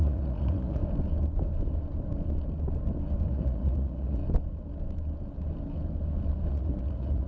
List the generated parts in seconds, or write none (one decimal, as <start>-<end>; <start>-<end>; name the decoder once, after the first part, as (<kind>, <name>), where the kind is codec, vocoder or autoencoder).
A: 0.0-0.8 (vocoder, Vocos); 3.3-4.2; 6.5-7.3